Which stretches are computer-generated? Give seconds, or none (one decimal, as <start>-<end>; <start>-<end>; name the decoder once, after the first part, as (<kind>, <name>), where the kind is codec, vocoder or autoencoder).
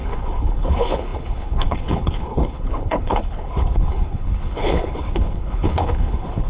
0.0-6.5 (codec, HILCodec)